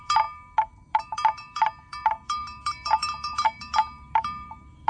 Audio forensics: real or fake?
fake